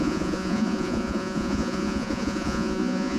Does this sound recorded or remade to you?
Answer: remade